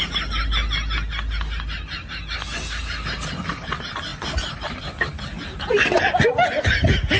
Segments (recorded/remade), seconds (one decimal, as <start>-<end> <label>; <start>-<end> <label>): 0.0-7.2 recorded